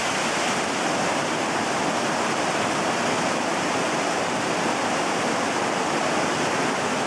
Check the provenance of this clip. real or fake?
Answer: real